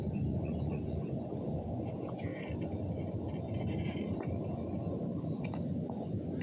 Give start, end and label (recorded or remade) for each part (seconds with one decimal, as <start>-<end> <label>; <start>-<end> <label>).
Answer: 0.0-2.3 remade; 2.3-5.2 recorded; 5.2-6.4 remade